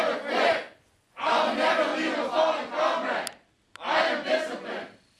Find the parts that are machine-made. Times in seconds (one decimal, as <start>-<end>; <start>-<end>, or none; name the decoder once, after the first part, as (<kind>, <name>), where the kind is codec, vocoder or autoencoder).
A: 0.0-1.9 (vocoder, Vocos)